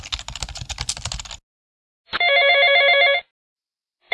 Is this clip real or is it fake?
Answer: real